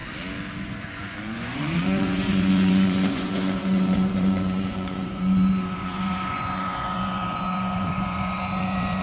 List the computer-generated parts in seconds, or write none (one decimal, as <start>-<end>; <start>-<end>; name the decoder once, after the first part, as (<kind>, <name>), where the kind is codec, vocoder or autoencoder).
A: 0.6-9.0 (vocoder, Vocos)